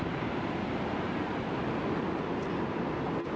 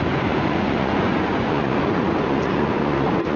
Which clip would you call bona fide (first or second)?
first